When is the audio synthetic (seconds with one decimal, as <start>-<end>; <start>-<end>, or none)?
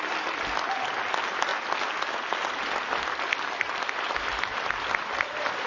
none